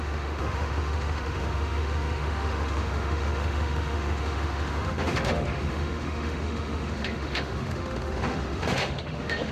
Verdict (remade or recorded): remade